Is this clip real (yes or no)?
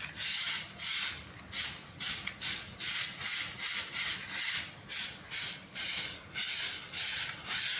yes